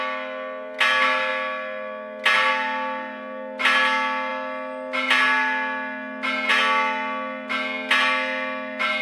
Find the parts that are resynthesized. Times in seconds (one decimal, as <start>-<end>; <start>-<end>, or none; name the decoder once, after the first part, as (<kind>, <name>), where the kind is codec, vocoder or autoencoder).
none